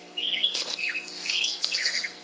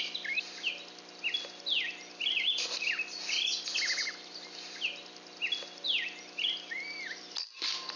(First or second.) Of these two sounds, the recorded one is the second